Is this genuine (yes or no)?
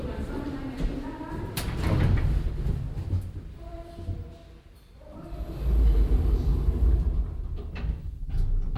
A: yes